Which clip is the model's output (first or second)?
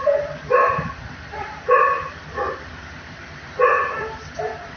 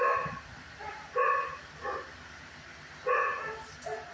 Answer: first